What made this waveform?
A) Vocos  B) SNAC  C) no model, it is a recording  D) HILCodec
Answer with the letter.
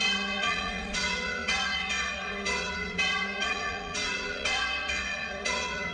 A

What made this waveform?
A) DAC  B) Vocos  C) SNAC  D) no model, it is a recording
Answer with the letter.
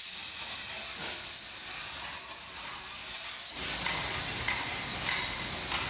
D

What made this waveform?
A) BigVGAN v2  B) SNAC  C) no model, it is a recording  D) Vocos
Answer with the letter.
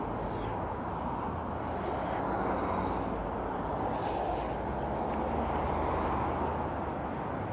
C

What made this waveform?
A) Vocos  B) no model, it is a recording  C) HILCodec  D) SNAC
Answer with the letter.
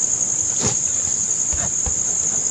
B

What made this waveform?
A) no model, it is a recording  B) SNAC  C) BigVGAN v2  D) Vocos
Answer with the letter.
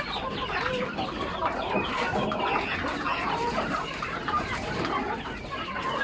C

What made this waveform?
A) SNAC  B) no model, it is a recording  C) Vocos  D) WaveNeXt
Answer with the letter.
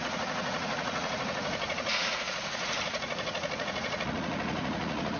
C